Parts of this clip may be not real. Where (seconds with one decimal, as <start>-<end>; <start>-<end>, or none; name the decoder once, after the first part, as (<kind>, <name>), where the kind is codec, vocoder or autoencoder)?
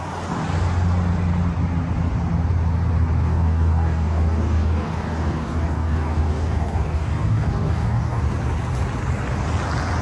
3.2-8.2 (codec, DAC)